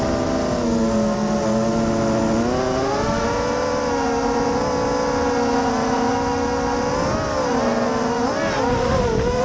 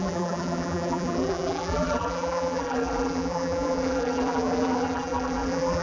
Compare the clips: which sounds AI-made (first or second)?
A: second